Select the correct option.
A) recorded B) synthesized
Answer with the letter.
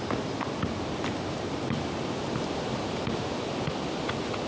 A